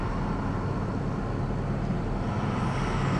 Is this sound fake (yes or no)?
no